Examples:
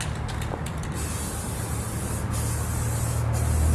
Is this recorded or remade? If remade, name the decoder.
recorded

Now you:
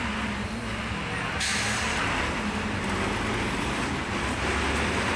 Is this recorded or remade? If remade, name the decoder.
recorded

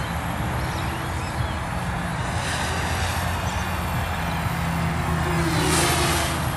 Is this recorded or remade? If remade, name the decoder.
recorded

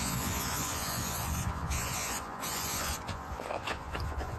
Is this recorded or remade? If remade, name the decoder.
remade, vocoder, Vocos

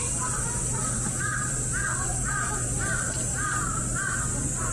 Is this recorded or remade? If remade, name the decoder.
recorded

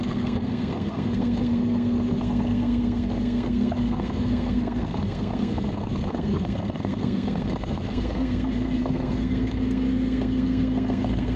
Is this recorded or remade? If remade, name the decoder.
remade, codec, SNAC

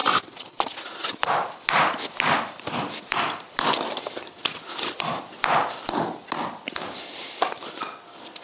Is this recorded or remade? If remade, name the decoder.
recorded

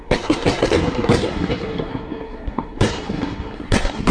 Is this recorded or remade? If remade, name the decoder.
remade, codec, SNAC